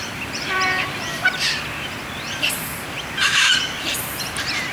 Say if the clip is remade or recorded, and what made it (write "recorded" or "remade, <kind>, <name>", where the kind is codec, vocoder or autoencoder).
remade, vocoder, BigVGAN v2